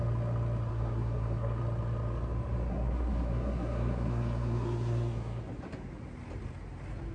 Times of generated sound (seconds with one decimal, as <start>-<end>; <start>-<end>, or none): 0.7-1.6; 2.7-5.4